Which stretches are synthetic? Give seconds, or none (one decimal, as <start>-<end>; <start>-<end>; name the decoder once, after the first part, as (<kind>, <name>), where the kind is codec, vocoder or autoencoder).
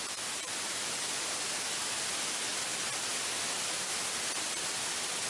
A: 0.0-0.5 (vocoder, BigVGAN v2); 2.5-3.1